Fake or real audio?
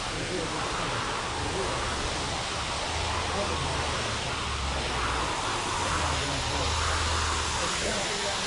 real